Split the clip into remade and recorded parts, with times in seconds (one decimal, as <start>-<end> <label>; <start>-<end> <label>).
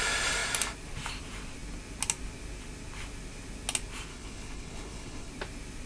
0.0-4.1 recorded; 4.1-5.3 remade; 5.3-5.9 recorded